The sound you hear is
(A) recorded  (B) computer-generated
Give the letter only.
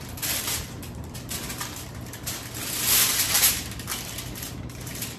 B